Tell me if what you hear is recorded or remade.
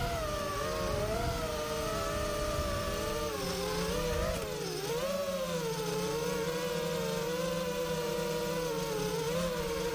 recorded